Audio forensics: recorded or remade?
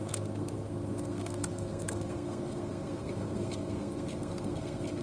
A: remade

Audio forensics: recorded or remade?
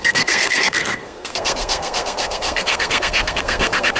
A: remade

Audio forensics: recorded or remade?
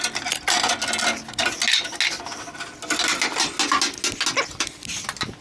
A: recorded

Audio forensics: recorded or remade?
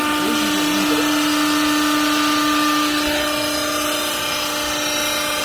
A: recorded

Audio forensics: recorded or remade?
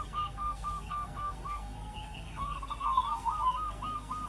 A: remade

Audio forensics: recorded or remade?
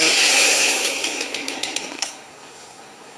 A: remade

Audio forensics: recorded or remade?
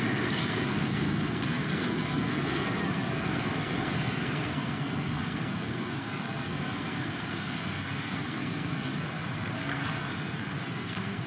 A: remade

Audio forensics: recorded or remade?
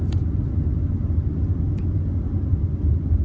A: recorded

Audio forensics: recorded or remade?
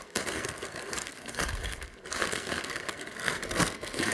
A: remade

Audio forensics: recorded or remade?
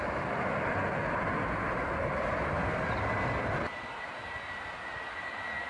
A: recorded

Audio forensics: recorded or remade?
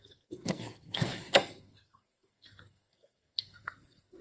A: remade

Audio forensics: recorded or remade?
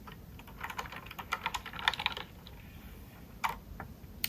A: recorded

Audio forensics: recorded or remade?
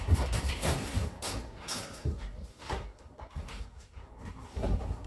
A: remade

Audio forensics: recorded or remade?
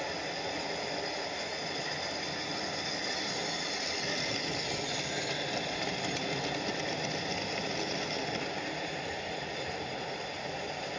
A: recorded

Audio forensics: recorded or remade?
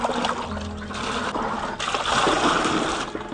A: recorded